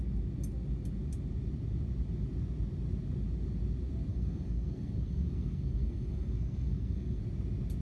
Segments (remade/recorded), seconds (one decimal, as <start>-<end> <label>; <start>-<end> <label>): 0.0-4.1 recorded; 4.1-7.2 remade; 7.2-7.8 recorded